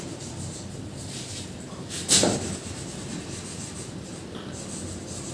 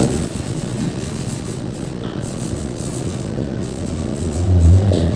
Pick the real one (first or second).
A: first